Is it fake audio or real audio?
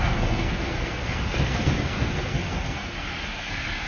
fake